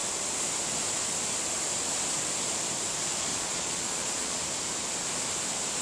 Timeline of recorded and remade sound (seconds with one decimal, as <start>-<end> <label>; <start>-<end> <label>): 0.0-3.3 recorded; 3.3-4.4 remade; 4.4-5.8 recorded